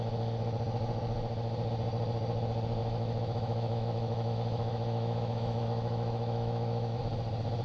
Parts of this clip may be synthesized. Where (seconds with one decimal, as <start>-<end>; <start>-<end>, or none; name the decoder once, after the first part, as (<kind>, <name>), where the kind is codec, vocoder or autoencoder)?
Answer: 2.8-7.0 (autoencoder, DAC-VAE)